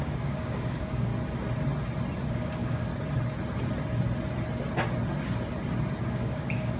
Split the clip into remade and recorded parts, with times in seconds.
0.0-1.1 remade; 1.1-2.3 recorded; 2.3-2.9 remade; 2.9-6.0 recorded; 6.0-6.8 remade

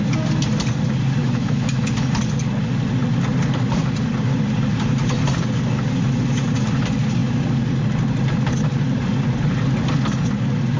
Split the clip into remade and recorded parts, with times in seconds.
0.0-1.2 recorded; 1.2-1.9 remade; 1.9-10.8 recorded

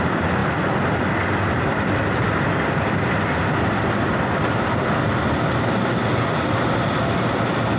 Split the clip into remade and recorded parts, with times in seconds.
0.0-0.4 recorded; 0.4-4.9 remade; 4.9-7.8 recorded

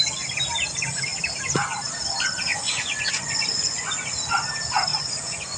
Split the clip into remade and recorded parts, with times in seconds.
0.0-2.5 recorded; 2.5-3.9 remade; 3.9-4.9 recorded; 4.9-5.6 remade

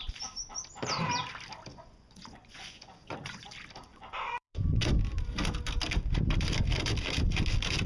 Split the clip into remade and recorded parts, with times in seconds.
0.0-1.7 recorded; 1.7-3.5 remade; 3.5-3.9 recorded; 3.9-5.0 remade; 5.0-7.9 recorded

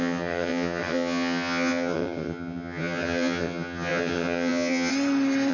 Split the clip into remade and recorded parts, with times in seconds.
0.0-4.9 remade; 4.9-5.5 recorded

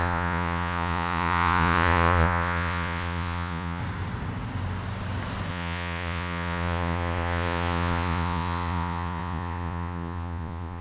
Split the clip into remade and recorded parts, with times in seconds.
0.0-3.8 remade; 3.8-5.5 recorded; 5.5-10.8 remade

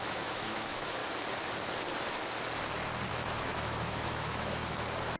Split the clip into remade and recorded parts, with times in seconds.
0.0-1.0 remade; 1.0-3.1 recorded; 3.1-4.6 remade; 4.6-5.2 recorded